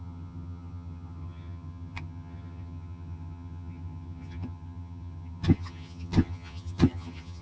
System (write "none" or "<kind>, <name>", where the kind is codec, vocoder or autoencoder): vocoder, HiFi-GAN